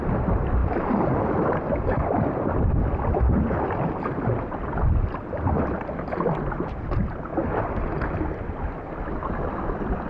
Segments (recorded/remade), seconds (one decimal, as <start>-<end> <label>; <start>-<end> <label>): 0.0-0.6 remade; 0.6-5.6 recorded; 5.6-7.3 remade; 7.3-8.7 recorded; 8.7-10.1 remade